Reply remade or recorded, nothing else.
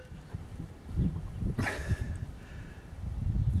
recorded